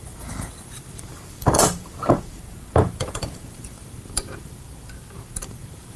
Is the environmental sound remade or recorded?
remade